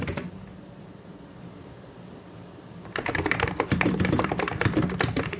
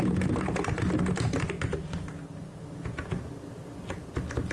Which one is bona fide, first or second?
second